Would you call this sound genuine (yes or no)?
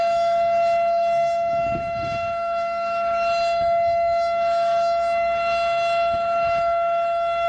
no